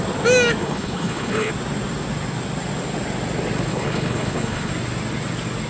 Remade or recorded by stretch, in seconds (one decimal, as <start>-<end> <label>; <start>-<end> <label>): 0.0-0.6 recorded; 0.6-1.5 remade; 1.5-3.7 recorded; 3.7-4.7 remade; 4.7-5.7 recorded